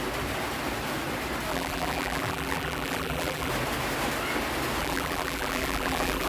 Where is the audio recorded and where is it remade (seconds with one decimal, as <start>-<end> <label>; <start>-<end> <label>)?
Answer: 0.0-1.5 recorded; 1.5-3.5 remade; 3.5-4.8 recorded; 4.8-6.3 remade